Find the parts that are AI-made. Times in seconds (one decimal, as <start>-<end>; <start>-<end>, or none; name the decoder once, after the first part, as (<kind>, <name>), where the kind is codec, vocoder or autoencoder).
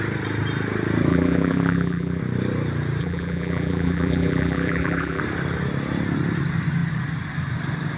1.1-2.2 (vocoder, BigVGAN v2); 3.0-5.2